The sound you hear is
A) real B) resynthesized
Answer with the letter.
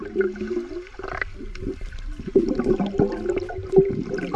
A